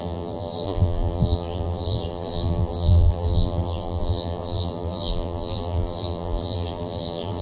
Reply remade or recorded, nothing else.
remade